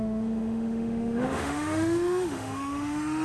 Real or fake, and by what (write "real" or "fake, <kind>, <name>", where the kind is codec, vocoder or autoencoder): fake, autoencoder, DAC-VAE